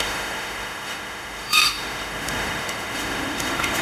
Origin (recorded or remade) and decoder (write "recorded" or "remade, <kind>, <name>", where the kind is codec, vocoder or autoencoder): remade, autoencoder, DAC-VAE